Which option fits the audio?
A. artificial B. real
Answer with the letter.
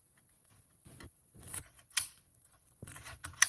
A